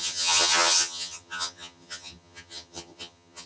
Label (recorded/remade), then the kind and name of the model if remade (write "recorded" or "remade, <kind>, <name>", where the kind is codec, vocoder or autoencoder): remade, vocoder, HiFi-GAN